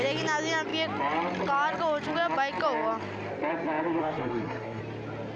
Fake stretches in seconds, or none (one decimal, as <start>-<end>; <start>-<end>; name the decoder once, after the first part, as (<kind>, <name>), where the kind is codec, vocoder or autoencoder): 4.0-4.8 (codec, SNAC)